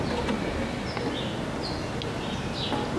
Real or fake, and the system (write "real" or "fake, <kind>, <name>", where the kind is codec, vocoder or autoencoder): real